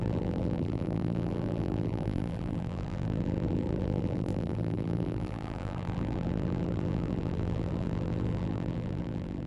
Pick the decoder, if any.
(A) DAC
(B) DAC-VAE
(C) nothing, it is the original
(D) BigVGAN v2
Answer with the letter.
D